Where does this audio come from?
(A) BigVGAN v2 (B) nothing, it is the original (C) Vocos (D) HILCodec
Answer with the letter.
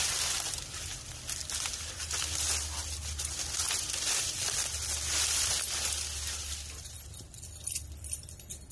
B